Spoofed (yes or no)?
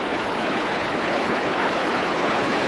yes